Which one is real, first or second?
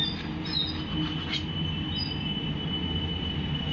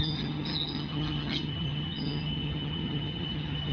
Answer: first